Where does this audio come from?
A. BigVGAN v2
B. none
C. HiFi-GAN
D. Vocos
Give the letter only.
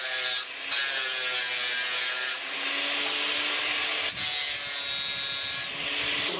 B